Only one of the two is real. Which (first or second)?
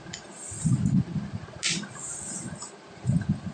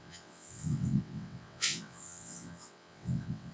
first